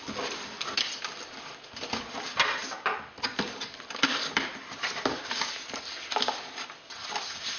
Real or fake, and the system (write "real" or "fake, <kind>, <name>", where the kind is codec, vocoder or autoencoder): real